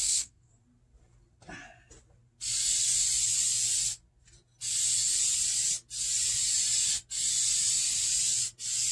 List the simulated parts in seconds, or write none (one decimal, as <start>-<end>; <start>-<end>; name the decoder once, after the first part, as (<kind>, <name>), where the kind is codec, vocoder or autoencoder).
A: 0.0-0.5 (codec, SNAC)